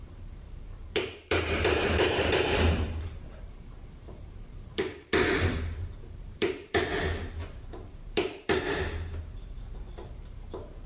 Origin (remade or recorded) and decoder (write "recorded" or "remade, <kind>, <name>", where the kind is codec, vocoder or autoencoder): remade, vocoder, BigVGAN v2